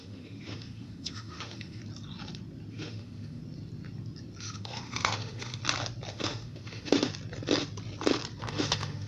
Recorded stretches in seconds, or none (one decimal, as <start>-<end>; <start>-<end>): 1.8-2.7; 3.4-4.4; 5.6-6.1; 7.1-8.4